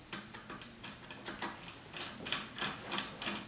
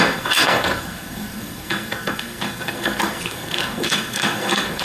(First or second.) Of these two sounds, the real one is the first